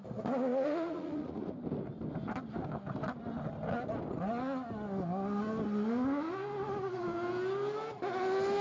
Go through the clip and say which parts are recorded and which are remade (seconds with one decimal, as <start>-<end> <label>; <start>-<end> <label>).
0.0-0.5 recorded; 0.5-1.5 remade; 1.5-8.6 recorded